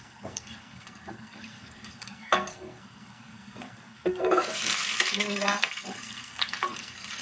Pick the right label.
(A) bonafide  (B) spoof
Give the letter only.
B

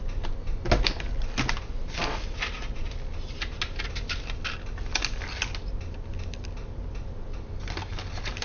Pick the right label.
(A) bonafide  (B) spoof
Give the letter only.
A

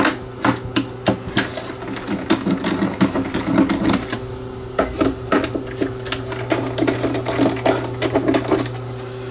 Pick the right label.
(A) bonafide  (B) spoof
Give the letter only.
A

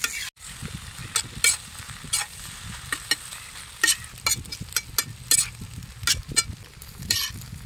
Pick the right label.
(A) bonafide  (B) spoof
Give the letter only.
A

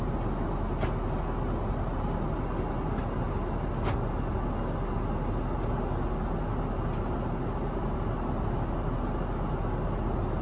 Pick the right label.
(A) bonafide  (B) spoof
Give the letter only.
A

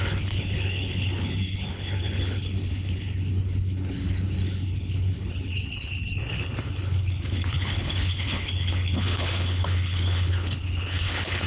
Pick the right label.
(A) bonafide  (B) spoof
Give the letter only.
B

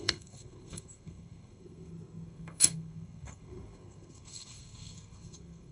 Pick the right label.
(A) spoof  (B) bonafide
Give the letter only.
A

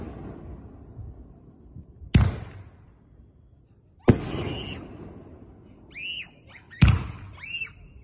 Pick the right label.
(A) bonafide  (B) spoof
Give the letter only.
A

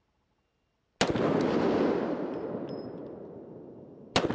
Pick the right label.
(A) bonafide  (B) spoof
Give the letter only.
A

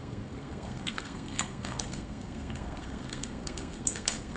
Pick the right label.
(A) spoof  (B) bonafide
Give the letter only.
A